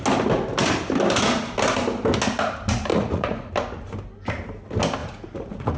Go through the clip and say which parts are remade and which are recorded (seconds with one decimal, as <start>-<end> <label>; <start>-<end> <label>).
0.0-2.9 recorded; 2.9-3.5 remade; 3.5-5.0 recorded; 5.0-5.8 remade